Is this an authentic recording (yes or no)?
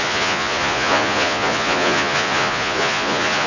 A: no